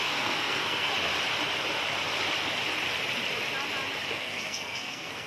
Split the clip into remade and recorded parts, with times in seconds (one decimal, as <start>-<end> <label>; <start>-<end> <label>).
0.0-0.9 remade; 0.9-4.1 recorded; 4.1-5.3 remade